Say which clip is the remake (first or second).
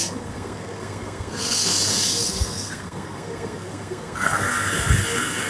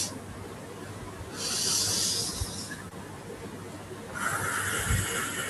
first